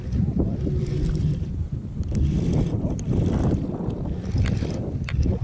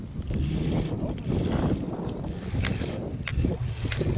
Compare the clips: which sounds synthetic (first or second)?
first